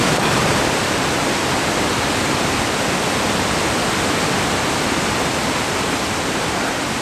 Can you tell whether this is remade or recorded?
recorded